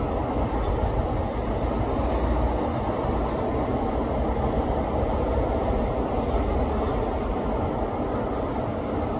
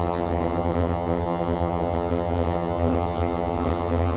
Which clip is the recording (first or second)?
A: first